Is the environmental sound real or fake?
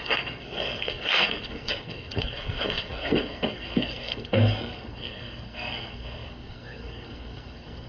fake